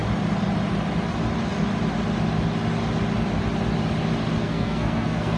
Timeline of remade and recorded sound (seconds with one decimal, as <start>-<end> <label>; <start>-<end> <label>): 0.0-4.4 recorded; 4.4-5.4 remade